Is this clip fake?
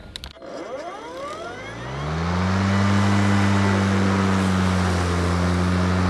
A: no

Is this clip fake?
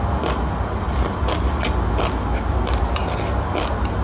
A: no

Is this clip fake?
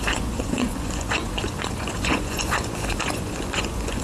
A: yes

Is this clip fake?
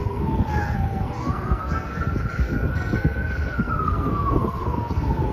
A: yes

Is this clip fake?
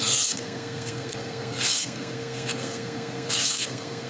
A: yes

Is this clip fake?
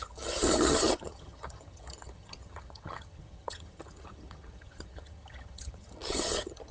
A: yes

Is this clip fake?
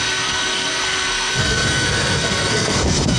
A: yes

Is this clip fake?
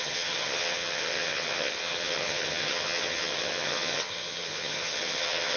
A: yes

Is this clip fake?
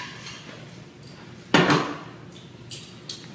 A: no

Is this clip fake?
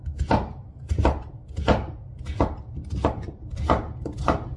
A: no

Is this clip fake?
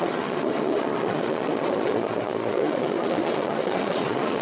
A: yes